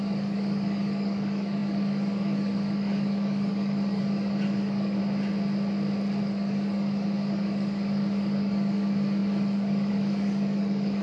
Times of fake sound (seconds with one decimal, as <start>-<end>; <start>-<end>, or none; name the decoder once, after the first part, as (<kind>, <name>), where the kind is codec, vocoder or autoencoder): 0.0-5.0 (codec, DAC); 6.2-11.0